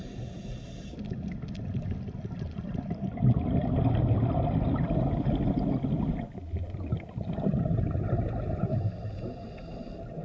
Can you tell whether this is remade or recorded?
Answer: recorded